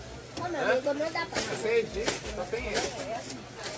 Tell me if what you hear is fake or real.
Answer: real